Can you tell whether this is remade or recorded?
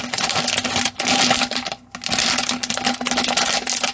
recorded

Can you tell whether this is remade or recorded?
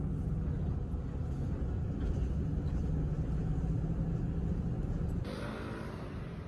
recorded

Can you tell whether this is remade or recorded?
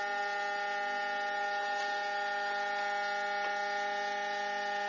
recorded